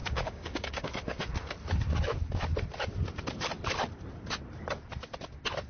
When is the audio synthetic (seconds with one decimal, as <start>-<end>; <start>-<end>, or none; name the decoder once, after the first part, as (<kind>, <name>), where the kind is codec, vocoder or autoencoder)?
0.0-1.3 (codec, DAC)